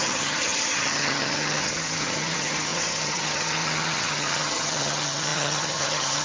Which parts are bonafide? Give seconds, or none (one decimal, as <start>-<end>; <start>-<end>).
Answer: none